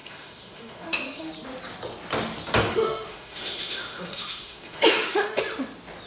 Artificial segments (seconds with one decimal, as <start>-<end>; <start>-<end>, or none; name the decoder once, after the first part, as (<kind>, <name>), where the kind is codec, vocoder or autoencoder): 0.0-1.3 (autoencoder, DAC-VAE); 2.7-5.4